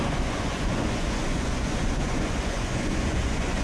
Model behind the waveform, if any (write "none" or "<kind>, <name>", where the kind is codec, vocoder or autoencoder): vocoder, Vocos